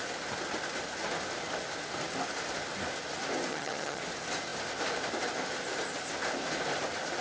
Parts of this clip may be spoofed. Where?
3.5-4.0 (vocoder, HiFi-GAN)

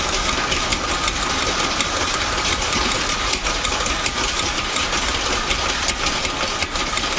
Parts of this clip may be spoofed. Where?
0.7-5.0 (vocoder, BigVGAN v2)

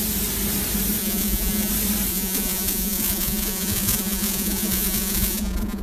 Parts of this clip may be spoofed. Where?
1.0-1.7 (vocoder, Vocos); 2.1-5.8

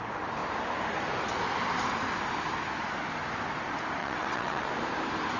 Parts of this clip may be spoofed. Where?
4.0-4.7 (vocoder, WaveNeXt)

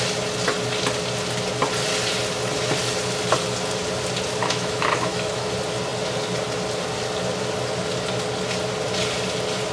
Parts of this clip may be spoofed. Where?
4.4-5.5 (autoencoder, DAC-VAE)